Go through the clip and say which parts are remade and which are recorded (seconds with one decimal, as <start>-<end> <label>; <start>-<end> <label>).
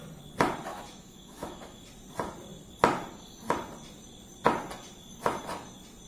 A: 0.0-0.7 recorded; 0.7-1.9 remade; 1.9-6.1 recorded